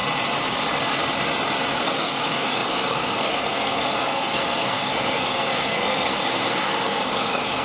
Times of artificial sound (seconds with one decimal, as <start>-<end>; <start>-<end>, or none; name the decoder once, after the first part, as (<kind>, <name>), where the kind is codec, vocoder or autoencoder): 1.7-7.6 (codec, SNAC)